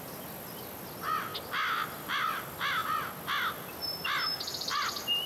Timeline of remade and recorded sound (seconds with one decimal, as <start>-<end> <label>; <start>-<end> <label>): 0.0-5.3 recorded